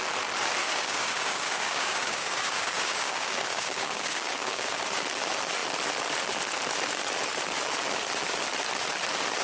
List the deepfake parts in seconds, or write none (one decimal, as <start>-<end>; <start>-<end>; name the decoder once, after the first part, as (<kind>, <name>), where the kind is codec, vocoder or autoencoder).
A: 0.6-4.8 (codec, DAC)